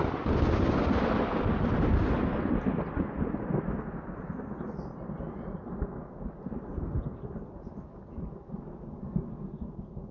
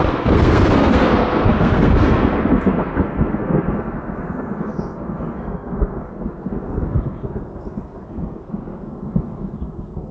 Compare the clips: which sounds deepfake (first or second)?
second